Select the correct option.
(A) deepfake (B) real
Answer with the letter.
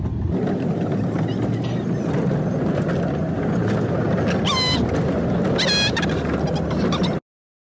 B